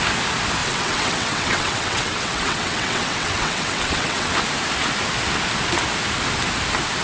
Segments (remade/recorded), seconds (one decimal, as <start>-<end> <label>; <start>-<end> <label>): 0.0-0.6 recorded; 0.6-4.3 remade; 4.3-7.0 recorded